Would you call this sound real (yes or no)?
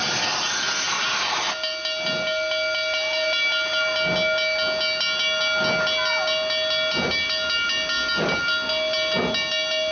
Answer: yes